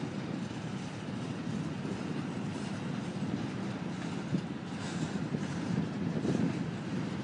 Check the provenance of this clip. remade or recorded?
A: remade